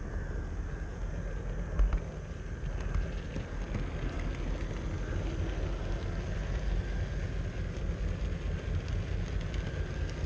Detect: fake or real real